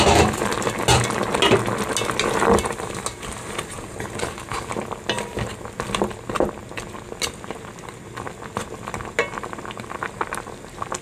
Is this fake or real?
real